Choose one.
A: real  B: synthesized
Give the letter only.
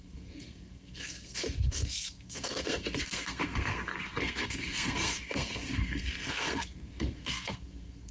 B